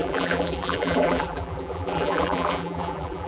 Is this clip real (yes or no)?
no